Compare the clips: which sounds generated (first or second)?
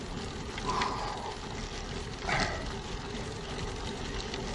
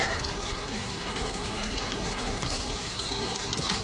second